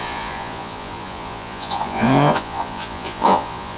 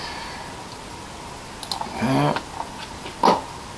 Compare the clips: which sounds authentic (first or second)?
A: second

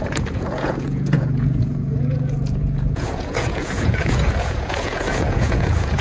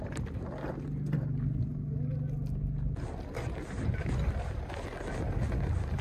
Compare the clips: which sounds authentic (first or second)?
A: second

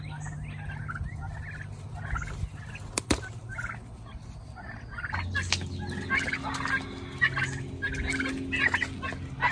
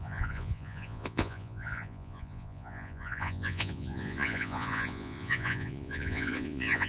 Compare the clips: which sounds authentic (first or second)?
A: first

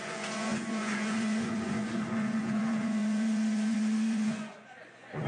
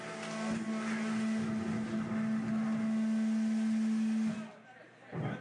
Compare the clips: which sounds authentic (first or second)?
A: second